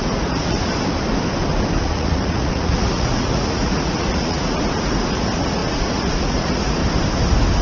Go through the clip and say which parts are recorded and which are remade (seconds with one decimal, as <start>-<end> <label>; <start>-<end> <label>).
0.0-0.7 remade; 0.7-1.8 recorded; 1.8-6.8 remade; 6.8-7.6 recorded